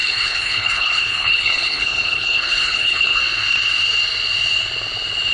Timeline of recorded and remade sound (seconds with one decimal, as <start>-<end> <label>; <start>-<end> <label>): 0.0-3.2 remade; 3.2-5.3 recorded